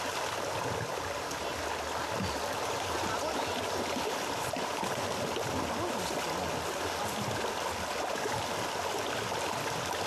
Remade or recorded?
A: recorded